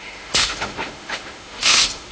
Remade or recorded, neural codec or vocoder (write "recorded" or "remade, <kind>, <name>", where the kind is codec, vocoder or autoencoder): remade, autoencoder, DAC-VAE